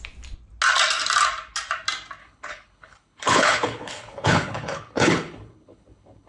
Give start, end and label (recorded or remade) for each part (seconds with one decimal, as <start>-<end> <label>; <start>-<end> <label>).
0.0-2.2 recorded; 2.2-6.3 remade